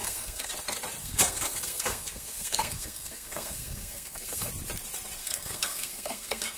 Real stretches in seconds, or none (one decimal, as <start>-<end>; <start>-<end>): 0.5-1.0; 4.5-5.2